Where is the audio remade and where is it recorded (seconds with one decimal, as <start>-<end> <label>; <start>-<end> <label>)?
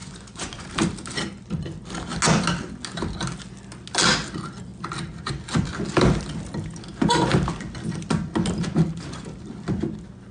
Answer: 0.0-0.7 remade; 0.7-10.3 recorded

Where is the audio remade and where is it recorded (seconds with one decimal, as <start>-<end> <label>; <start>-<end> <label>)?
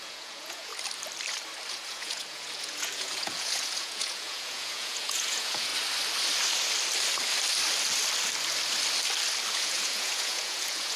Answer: 0.0-0.7 remade; 0.7-1.7 recorded; 1.7-5.7 remade; 5.7-9.5 recorded; 9.5-11.0 remade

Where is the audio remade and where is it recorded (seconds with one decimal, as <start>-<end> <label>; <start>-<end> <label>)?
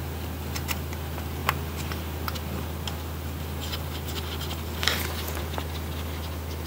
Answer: 0.0-6.7 recorded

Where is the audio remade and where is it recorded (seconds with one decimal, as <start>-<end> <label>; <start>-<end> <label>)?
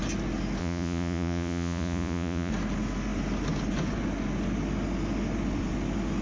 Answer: 0.0-0.6 recorded; 0.6-2.5 remade; 2.5-6.2 recorded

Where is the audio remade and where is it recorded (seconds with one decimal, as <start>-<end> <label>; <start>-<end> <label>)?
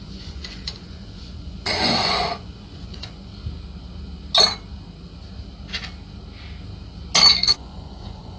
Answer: 0.0-3.3 remade; 3.3-7.3 recorded; 7.3-8.4 remade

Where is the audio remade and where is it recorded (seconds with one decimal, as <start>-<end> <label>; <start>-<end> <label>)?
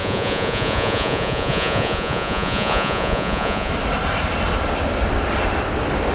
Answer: 0.0-3.7 remade; 3.7-6.1 recorded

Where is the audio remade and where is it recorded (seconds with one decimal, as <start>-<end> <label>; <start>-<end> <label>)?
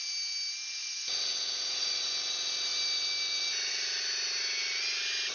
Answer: 0.0-0.8 recorded; 0.8-2.1 remade; 2.1-5.3 recorded